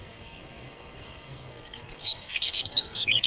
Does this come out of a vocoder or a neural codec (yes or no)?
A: yes